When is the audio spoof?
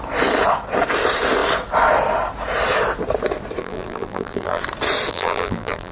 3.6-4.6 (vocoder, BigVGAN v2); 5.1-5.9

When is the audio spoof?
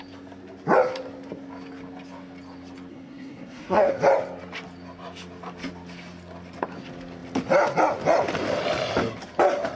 2.9-3.9 (codec, SNAC)